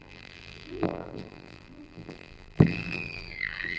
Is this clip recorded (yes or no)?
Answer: no